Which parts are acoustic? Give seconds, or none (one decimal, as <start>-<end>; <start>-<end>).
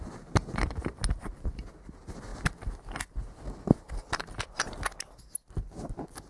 0.0-6.3